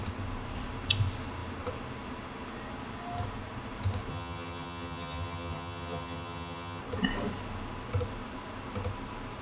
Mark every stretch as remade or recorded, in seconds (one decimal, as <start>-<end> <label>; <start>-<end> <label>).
0.0-4.1 recorded; 4.1-6.8 remade; 6.8-9.4 recorded